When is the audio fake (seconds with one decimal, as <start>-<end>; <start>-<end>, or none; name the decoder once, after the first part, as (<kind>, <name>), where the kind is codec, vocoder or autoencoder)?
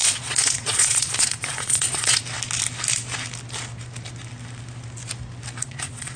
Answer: 0.0-2.2 (vocoder, Vocos); 5.6-6.2